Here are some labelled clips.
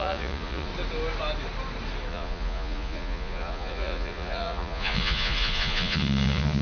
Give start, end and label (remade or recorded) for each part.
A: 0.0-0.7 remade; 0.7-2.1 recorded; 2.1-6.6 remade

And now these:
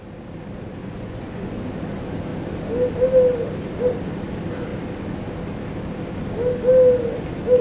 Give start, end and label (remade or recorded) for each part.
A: 0.0-0.8 recorded; 0.8-1.5 remade; 1.5-7.6 recorded

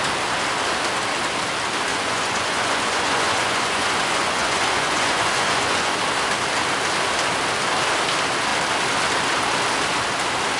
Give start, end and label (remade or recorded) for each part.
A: 0.0-1.9 recorded; 1.9-6.0 remade; 6.0-10.6 recorded

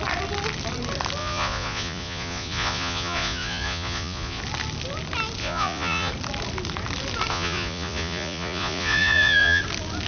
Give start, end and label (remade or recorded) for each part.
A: 0.0-1.2 recorded; 1.2-4.4 remade; 4.4-5.4 recorded; 5.4-6.1 remade; 6.1-7.3 recorded; 7.3-9.6 remade; 9.6-10.1 recorded

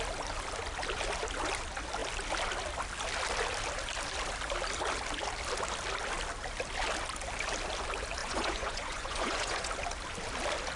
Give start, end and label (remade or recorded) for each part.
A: 0.0-8.2 recorded; 8.2-9.7 remade; 9.7-10.8 recorded

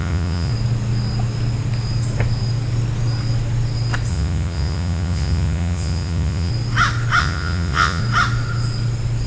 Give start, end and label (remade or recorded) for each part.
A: 0.0-0.5 remade; 0.5-4.1 recorded; 4.1-6.5 remade; 6.5-7.2 recorded; 7.2-8.0 remade; 8.0-9.3 recorded